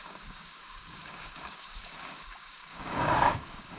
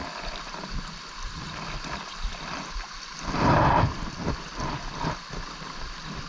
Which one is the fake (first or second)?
first